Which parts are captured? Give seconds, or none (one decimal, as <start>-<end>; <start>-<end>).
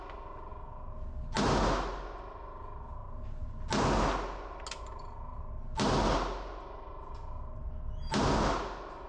0.0-9.1